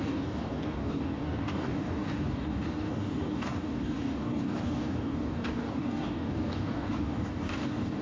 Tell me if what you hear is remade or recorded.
remade